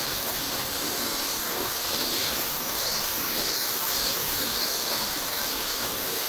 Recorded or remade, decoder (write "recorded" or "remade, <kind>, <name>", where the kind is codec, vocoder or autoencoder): remade, codec, DAC